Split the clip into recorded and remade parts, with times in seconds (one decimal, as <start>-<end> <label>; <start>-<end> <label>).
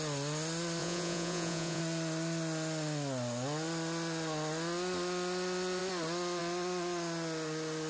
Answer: 0.0-0.8 recorded; 0.8-1.8 remade; 1.8-7.9 recorded